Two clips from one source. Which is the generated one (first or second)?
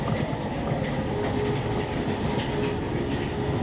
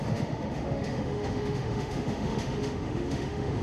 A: second